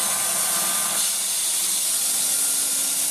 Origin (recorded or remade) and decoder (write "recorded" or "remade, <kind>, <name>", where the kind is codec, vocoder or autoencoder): recorded